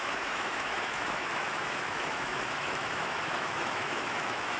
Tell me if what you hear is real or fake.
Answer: fake